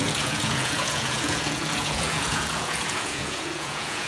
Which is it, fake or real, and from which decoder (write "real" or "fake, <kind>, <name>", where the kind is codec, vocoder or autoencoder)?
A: fake, vocoder, Vocos